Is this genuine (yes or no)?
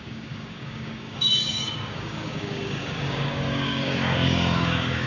no